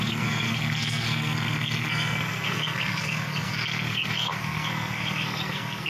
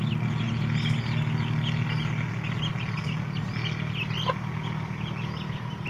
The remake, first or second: first